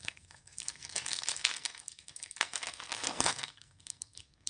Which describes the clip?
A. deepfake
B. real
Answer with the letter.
A